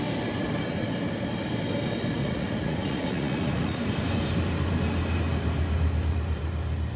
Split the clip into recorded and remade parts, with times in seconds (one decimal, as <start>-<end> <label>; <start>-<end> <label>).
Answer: 0.0-2.2 recorded; 2.2-3.8 remade; 3.8-7.0 recorded